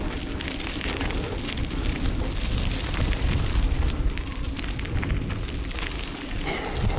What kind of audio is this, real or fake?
real